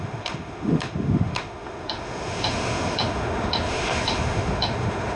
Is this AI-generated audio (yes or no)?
yes